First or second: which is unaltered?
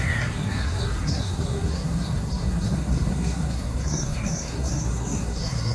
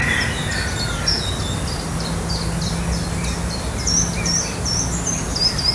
second